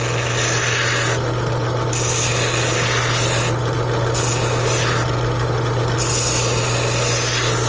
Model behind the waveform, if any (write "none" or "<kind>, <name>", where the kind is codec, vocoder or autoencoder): none